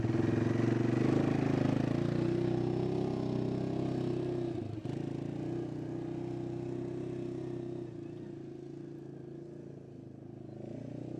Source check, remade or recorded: recorded